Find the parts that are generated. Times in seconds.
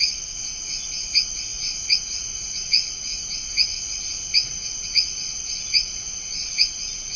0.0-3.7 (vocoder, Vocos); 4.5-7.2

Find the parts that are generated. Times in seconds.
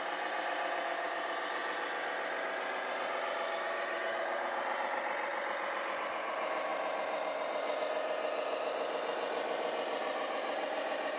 0.0-1.6 (vocoder, BigVGAN v2); 3.6-5.3; 6.0-11.2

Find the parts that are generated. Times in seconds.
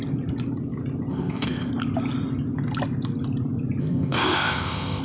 1.1-1.7 (codec, ZipCodec); 3.8-5.0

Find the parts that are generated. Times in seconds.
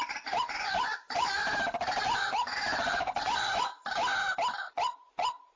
0.0-1.4 (vocoder, Vocos); 2.0-3.7; 4.6-5.6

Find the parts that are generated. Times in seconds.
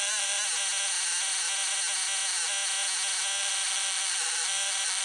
0.0-0.4 (vocoder, BigVGAN v2); 3.4-5.0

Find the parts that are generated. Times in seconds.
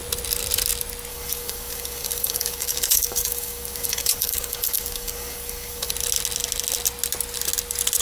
1.1-5.9 (codec, DAC)